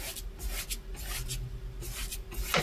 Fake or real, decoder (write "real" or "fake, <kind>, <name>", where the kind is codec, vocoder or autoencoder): real